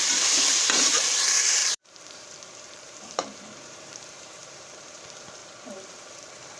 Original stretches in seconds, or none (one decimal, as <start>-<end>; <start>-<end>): none